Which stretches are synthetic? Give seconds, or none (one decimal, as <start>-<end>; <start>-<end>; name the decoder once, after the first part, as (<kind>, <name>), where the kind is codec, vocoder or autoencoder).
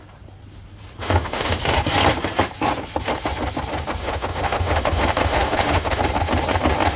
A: 1.0-1.6 (autoencoder, DAC-VAE); 4.0-6.0